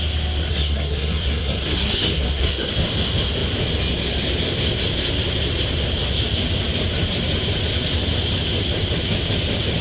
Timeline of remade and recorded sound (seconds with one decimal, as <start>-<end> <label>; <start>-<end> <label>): 0.0-0.5 recorded; 0.5-2.7 remade; 2.7-9.8 recorded